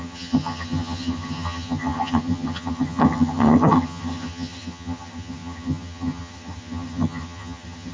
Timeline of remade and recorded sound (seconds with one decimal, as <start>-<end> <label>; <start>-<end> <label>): 0.0-7.9 remade